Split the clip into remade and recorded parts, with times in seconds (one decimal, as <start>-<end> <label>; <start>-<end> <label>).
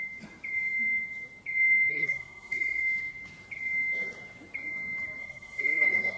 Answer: 0.0-1.9 recorded; 1.9-2.8 remade; 2.8-5.2 recorded; 5.2-6.2 remade